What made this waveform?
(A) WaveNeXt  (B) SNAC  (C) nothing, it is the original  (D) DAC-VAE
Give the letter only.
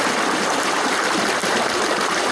C